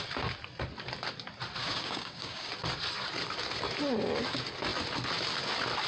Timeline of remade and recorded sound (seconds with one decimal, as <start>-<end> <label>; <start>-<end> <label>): 0.0-1.6 recorded; 1.6-2.5 remade; 2.5-5.9 recorded